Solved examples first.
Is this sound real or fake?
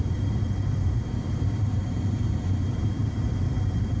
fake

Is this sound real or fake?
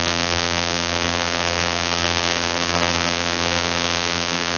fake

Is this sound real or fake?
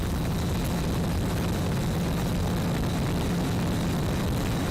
real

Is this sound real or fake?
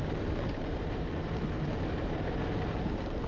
fake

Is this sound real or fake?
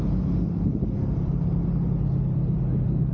real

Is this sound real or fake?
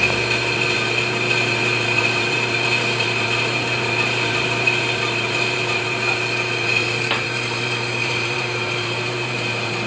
fake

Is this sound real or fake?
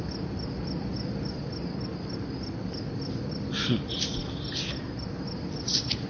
real